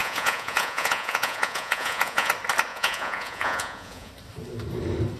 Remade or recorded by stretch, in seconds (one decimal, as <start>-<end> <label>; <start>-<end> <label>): 0.0-2.3 remade; 2.3-2.7 recorded; 2.7-4.1 remade; 4.1-5.2 recorded